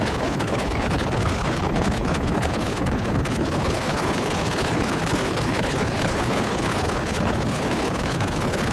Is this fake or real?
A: fake